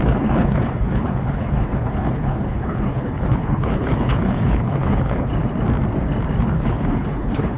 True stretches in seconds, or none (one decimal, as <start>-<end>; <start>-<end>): 5.3-6.4